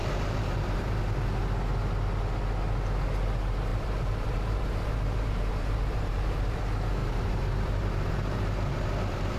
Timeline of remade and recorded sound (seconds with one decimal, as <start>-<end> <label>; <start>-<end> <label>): 0.0-1.0 remade; 1.0-3.7 recorded; 3.7-6.6 remade; 6.6-7.0 recorded; 7.0-9.4 remade